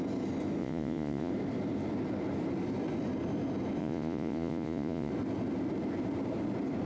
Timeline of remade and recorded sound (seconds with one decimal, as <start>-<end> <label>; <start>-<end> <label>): 0.0-0.6 recorded; 0.6-1.3 remade; 1.3-3.8 recorded; 3.8-5.1 remade; 5.1-6.9 recorded